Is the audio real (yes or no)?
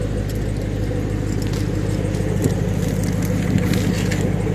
yes